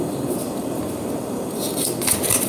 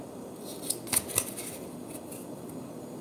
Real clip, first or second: second